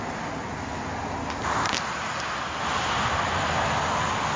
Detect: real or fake real